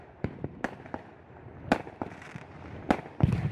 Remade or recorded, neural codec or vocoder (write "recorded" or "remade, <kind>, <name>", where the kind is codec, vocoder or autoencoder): remade, vocoder, BigVGAN v2